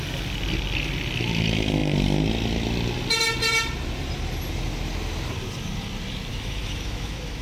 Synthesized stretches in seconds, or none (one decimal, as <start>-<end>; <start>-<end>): 6.3-7.4